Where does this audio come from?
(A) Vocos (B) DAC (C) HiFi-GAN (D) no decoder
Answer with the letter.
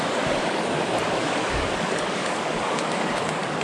B